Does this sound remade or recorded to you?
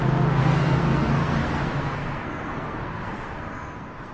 remade